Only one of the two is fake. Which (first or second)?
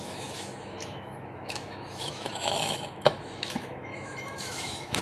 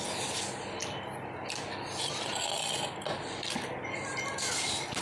first